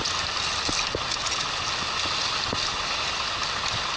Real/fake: real